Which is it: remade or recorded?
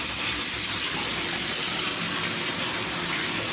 remade